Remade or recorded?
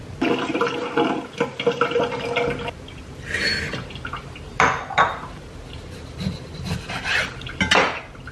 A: recorded